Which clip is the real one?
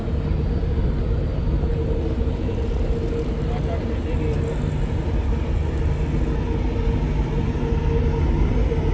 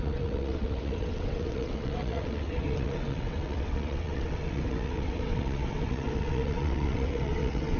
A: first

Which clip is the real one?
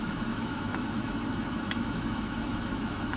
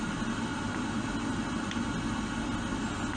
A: second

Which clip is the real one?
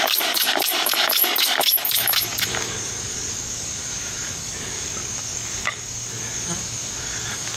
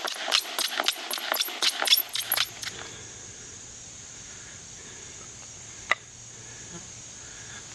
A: second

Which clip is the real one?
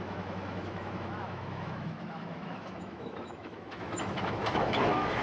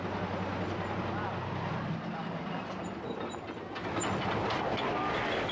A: second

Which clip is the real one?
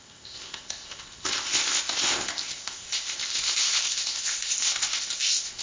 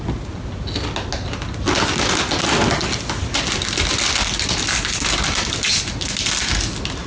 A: second